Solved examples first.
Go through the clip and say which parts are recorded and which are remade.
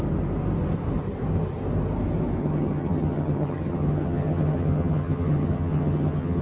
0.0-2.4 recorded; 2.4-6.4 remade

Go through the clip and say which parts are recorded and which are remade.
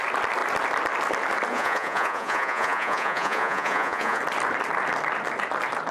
0.0-1.5 recorded; 1.5-4.2 remade; 4.2-5.9 recorded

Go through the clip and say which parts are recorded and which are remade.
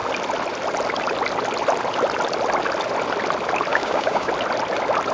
0.0-3.7 recorded; 3.7-4.3 remade; 4.3-5.1 recorded